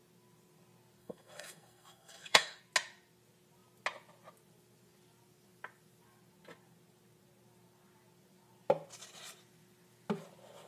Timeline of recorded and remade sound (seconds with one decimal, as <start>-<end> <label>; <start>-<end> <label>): 0.0-1.0 recorded; 1.0-2.6 remade; 2.6-10.7 recorded